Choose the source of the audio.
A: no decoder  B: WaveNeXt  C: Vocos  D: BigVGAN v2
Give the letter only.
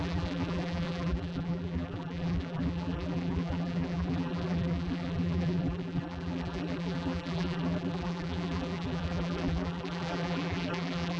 D